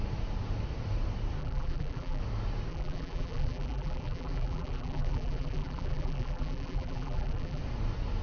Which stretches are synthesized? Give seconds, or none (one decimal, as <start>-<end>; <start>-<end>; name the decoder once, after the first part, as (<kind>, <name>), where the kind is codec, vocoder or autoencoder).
1.4-2.2 (vocoder, BigVGAN v2); 2.7-7.6